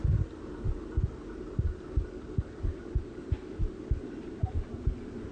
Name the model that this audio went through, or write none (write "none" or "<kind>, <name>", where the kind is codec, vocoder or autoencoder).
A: none